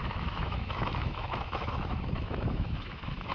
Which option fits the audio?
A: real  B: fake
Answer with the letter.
B